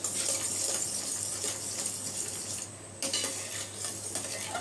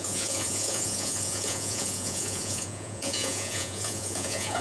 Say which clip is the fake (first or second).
second